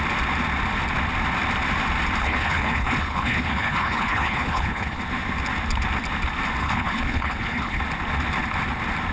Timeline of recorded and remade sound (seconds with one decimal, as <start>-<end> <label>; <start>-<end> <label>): 0.0-2.2 recorded; 2.2-5.0 remade; 5.0-6.6 recorded; 6.6-7.8 remade; 7.8-9.1 recorded